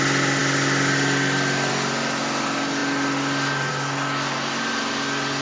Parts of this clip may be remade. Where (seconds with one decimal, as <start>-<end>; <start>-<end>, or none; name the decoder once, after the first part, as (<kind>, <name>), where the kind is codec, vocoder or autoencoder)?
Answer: none